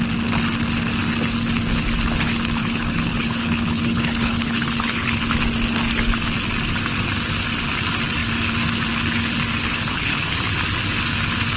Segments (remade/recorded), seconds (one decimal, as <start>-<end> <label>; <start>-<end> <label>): 0.0-2.6 recorded; 2.6-5.2 remade; 5.2-9.6 recorded; 9.6-10.2 remade; 10.2-11.6 recorded